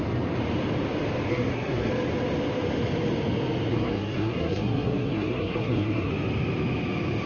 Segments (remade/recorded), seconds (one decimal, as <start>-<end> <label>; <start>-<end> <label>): 0.0-1.3 recorded; 1.3-1.9 remade; 1.9-3.7 recorded; 3.7-6.1 remade; 6.1-7.3 recorded